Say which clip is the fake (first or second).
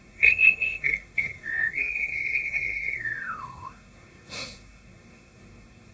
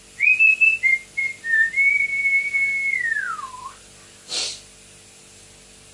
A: first